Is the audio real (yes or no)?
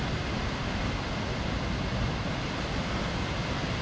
yes